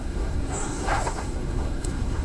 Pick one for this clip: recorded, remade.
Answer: remade